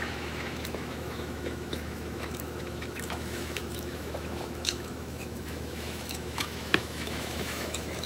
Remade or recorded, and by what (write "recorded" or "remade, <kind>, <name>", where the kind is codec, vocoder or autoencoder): remade, autoencoder, DAC-VAE